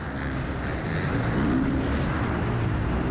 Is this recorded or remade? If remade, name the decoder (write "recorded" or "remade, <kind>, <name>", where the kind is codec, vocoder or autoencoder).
recorded